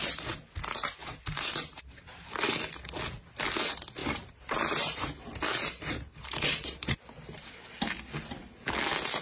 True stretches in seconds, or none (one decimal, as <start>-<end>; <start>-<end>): 0.0-1.0; 2.1-4.0; 7.5-9.2